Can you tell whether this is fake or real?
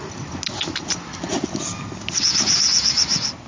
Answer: real